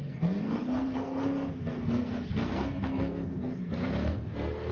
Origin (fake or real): fake